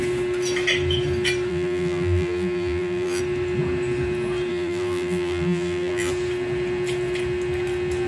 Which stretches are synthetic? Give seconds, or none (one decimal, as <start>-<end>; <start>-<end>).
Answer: 1.5-3.2; 4.5-6.1